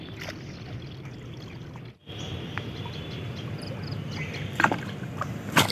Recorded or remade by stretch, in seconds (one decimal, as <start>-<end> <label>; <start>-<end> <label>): 0.0-2.3 recorded; 2.3-3.5 remade; 3.5-3.9 recorded; 3.9-5.1 remade; 5.1-5.7 recorded